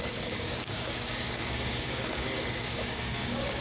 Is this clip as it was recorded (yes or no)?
no